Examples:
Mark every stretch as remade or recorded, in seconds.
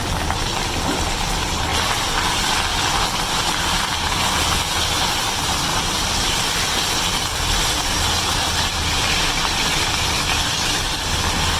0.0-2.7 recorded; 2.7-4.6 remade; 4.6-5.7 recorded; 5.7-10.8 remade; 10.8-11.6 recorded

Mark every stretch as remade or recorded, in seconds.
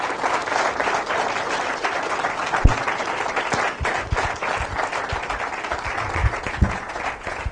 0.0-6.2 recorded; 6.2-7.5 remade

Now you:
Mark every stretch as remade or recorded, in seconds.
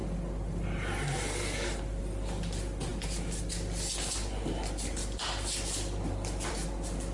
0.0-7.1 recorded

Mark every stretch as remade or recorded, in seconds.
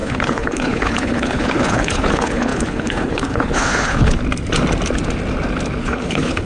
0.0-4.2 remade; 4.2-5.8 recorded; 5.8-6.5 remade